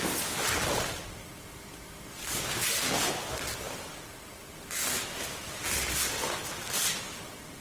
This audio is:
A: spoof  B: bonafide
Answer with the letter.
B